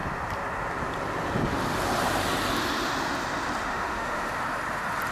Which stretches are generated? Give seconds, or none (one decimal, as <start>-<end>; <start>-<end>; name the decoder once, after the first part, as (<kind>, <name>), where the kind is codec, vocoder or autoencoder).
3.7-4.3 (autoencoder, DAC-VAE)